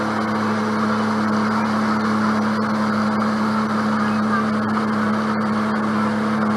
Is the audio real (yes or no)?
yes